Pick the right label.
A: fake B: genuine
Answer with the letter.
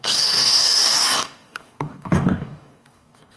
A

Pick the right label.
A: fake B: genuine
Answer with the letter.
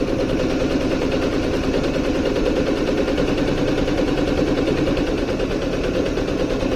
B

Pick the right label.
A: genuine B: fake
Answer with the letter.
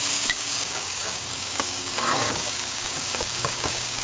B